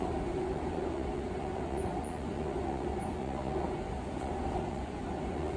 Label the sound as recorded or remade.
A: remade